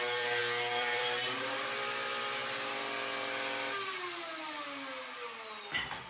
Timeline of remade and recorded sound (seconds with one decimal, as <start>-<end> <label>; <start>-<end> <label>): 0.0-2.4 remade; 2.4-6.1 recorded